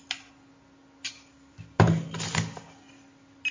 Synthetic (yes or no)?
no